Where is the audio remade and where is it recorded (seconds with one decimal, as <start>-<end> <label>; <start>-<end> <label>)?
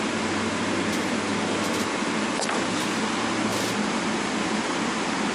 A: 0.0-3.5 recorded; 3.5-4.5 remade; 4.5-5.3 recorded